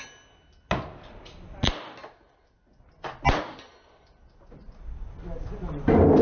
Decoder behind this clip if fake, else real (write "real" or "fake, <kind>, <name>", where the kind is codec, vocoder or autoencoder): real